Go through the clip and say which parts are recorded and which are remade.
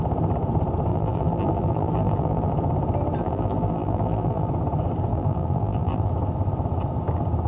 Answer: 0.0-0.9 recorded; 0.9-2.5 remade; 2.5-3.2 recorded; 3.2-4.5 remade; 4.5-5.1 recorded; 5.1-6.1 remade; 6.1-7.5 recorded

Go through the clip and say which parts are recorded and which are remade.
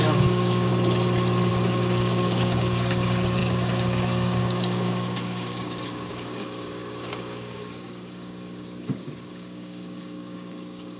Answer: 0.0-0.7 remade; 0.7-1.5 recorded; 1.5-11.0 remade